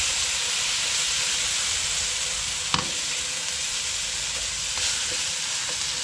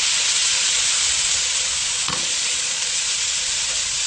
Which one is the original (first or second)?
first